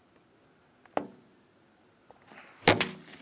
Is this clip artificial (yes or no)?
no